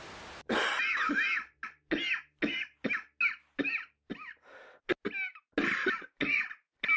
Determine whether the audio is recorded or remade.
recorded